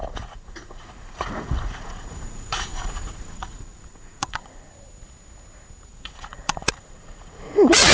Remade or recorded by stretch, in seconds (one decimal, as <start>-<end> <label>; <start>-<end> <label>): 0.0-4.7 remade; 4.7-5.9 recorded; 5.9-7.9 remade